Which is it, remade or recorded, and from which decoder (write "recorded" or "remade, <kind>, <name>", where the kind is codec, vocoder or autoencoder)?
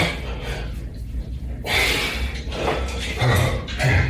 recorded